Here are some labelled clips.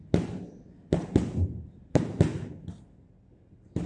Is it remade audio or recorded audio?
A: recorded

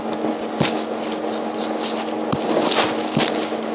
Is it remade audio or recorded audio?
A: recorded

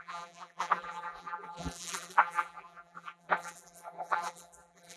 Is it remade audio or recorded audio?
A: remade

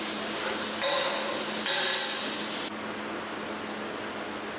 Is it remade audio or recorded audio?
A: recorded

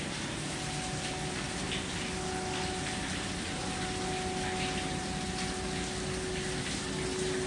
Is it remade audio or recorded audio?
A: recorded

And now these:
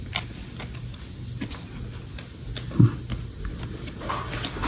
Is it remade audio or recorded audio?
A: recorded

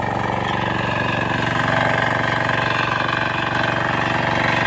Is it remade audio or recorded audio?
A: recorded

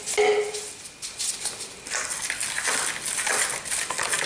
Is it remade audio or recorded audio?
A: recorded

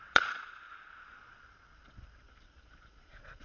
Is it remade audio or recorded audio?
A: remade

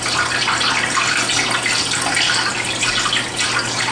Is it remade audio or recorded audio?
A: recorded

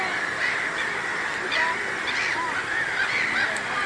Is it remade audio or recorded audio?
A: recorded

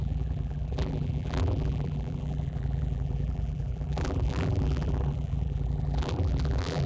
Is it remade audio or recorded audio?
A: remade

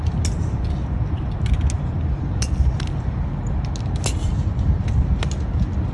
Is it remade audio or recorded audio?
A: recorded